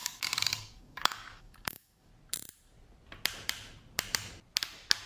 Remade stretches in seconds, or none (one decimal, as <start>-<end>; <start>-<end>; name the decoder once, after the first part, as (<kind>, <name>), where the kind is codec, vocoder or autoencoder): 0.0-2.1 (codec, DAC)